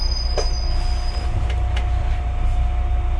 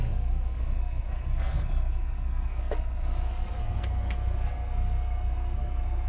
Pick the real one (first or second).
first